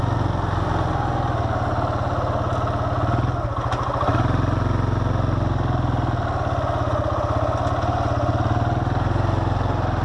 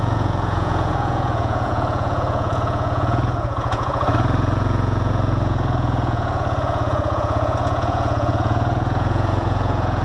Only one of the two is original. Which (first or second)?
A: first